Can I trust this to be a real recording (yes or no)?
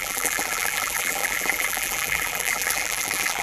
no